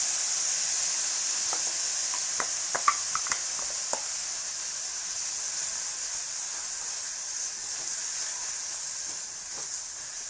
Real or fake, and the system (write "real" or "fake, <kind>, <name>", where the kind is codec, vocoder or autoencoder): real